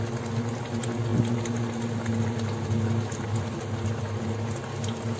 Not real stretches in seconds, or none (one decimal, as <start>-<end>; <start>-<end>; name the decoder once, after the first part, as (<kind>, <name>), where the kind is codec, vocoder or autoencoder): none